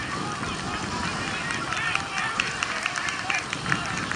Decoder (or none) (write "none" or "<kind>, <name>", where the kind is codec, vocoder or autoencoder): none